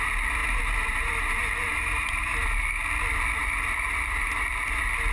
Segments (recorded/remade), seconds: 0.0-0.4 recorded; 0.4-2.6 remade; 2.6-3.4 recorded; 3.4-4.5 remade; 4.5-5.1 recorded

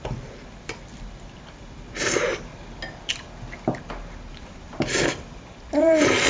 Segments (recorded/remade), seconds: 0.0-2.5 remade; 2.5-4.3 recorded; 4.3-6.3 remade